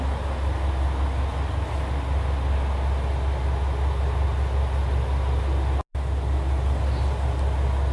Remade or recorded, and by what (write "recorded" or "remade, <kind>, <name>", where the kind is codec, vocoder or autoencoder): recorded